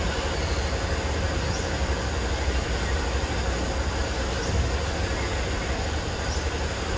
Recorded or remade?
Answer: recorded